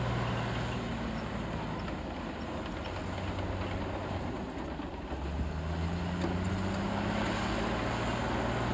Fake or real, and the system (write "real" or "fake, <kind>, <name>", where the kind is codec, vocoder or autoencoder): real